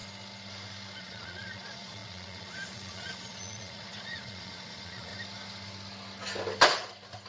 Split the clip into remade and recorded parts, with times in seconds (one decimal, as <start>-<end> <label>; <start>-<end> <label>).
0.0-1.0 recorded; 1.0-5.1 remade; 5.1-7.3 recorded